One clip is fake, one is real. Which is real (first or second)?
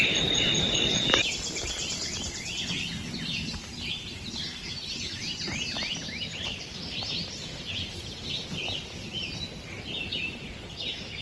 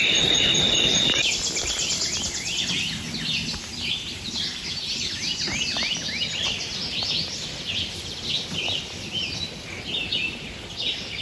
second